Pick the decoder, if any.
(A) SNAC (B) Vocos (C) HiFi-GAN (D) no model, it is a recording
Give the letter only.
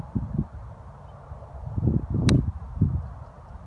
D